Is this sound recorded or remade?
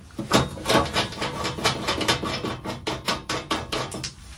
recorded